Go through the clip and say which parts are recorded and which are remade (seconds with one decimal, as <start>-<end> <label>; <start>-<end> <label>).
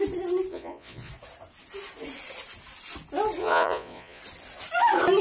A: 0.0-0.5 recorded; 0.5-1.1 remade; 1.1-3.4 recorded; 3.4-4.2 remade; 4.2-5.2 recorded